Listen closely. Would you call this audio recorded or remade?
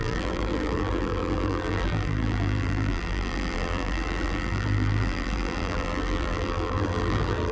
remade